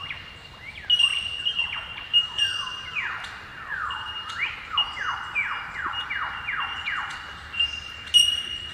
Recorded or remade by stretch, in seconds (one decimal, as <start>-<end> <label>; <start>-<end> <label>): 0.0-8.7 recorded